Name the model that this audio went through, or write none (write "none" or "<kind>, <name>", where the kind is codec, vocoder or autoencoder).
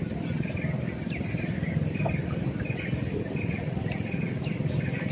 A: none